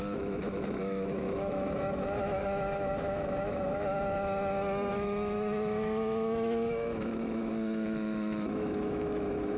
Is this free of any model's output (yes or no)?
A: no